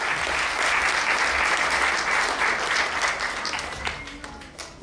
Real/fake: real